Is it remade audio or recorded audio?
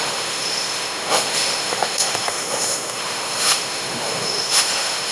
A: remade